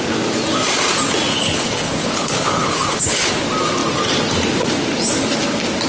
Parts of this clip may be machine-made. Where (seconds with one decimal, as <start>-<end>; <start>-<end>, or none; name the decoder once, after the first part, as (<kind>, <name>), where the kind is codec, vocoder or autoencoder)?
1.3-3.4 (codec, HILCodec)